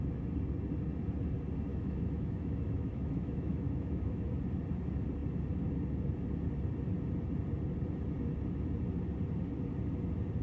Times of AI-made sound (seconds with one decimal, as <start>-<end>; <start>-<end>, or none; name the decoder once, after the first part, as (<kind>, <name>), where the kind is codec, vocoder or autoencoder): 1.7-4.3 (autoencoder, DAC-VAE)